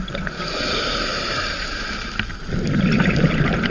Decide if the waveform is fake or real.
fake